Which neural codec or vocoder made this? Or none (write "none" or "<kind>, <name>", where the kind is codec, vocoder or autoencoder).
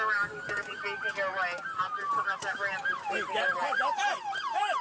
none